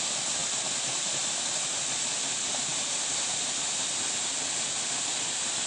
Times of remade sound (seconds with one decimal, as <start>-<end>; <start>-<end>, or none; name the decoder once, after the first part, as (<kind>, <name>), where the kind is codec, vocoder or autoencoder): none